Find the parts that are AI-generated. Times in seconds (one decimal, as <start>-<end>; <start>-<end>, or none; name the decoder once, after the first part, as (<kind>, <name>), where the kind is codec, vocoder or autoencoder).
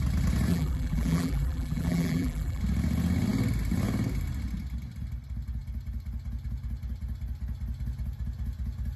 0.5-2.6 (vocoder, BigVGAN v2)